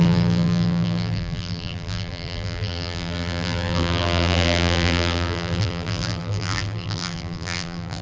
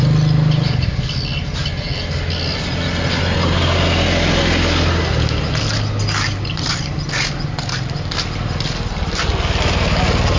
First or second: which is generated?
first